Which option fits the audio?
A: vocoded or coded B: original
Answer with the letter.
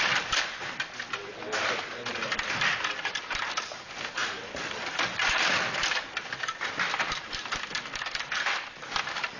B